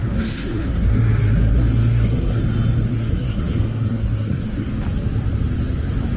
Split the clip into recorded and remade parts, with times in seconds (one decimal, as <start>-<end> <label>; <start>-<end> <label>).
0.0-2.4 remade; 2.4-2.9 recorded; 2.9-4.7 remade; 4.7-6.2 recorded